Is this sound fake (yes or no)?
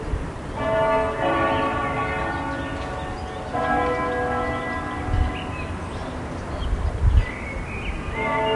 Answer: no